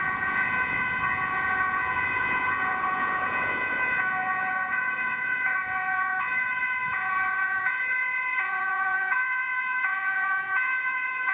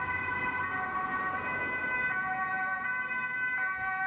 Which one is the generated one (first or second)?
first